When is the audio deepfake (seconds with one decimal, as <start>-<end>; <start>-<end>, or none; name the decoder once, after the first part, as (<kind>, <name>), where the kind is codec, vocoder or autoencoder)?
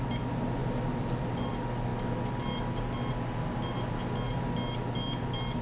none